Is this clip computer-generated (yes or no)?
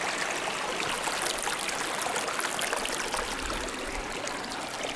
no